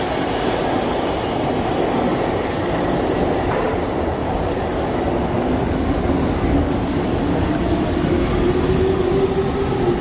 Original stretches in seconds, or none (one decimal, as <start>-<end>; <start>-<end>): 0.0-2.1; 2.9-4.2; 8.6-10.0